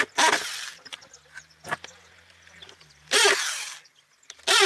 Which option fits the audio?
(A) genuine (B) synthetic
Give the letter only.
A